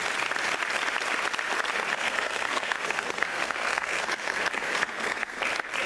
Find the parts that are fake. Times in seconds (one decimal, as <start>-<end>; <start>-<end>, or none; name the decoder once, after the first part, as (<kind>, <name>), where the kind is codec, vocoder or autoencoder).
1.9-5.4 (codec, SNAC)